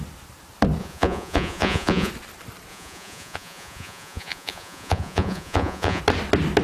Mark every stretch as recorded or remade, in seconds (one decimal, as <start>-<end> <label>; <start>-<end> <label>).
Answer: 0.0-0.8 recorded; 0.8-2.1 remade; 2.1-2.7 recorded; 2.7-6.0 remade; 6.0-6.6 recorded